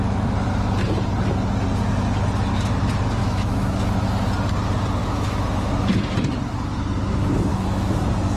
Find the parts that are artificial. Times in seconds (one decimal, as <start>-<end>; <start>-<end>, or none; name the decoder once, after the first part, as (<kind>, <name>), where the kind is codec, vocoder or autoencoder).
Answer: 3.2-3.9 (autoencoder, DAC-VAE); 5.0-5.7; 7.5-8.0

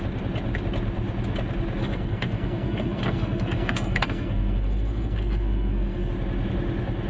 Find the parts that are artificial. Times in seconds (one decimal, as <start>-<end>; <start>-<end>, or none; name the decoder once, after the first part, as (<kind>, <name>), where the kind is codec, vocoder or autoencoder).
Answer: 1.8-6.1 (codec, SNAC)

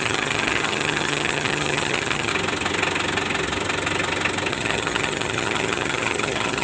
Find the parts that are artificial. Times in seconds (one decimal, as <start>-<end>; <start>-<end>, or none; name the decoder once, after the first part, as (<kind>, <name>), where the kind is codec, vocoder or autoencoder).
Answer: 0.0-2.3 (vocoder, HiFi-GAN); 4.5-6.6